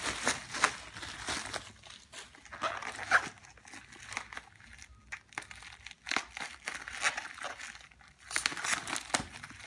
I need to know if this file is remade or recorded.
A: recorded